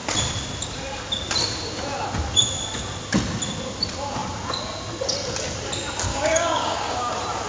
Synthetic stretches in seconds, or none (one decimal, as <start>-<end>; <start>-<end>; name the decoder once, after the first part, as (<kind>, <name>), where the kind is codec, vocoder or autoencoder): 6.1-7.1 (codec, DAC)